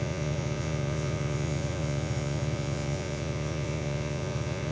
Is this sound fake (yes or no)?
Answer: yes